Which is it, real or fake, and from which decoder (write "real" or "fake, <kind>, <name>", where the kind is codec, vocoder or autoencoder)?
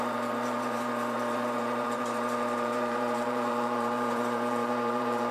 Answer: fake, vocoder, BigVGAN v2